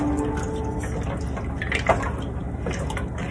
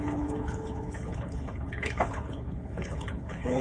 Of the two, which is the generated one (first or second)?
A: second